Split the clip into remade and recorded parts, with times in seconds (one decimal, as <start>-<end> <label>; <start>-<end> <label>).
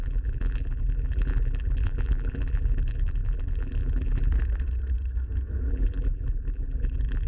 0.0-4.3 remade; 4.3-5.7 recorded; 5.7-7.3 remade